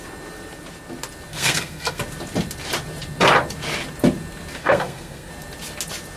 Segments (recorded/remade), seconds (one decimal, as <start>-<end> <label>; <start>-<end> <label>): 0.0-1.3 recorded; 1.3-2.0 remade; 2.0-4.6 recorded; 4.6-5.3 remade; 5.3-6.2 recorded